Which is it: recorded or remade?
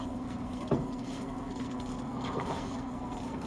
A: remade